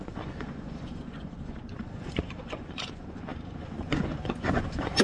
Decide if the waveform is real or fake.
fake